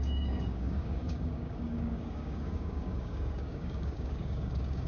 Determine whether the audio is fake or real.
fake